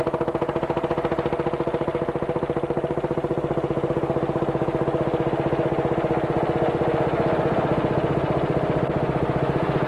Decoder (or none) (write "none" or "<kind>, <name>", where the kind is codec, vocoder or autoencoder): none